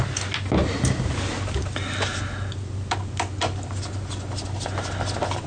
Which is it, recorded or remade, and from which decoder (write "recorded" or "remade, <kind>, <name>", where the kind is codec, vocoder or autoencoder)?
recorded